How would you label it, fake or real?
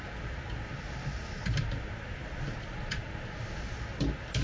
real